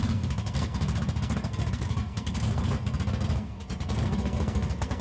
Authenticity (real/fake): fake